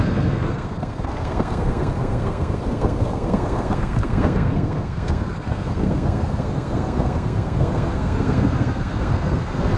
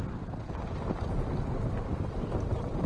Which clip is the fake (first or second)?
first